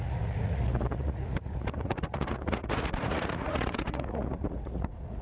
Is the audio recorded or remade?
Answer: remade